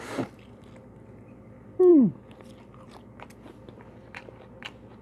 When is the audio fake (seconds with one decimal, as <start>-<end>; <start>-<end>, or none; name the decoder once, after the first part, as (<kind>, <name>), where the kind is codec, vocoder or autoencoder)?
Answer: none